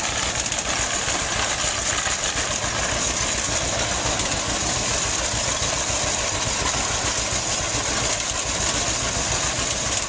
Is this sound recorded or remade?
recorded